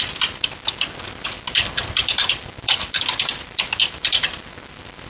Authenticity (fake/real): real